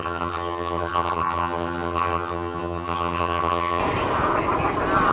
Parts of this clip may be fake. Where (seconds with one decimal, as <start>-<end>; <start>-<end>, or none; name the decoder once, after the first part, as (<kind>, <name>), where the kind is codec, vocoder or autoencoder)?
0.0-3.8 (vocoder, HiFi-GAN)